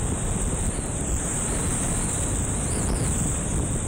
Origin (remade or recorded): recorded